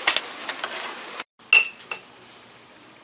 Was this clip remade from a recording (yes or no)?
no